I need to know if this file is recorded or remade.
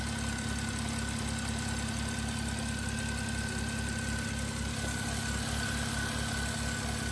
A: recorded